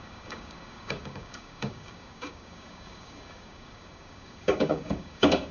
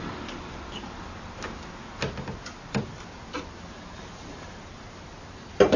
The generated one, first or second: first